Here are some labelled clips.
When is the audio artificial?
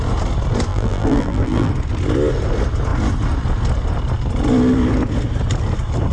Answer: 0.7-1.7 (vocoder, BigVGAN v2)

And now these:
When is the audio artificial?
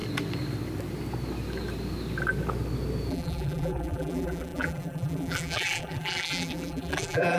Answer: 3.1-7.4 (vocoder, BigVGAN v2)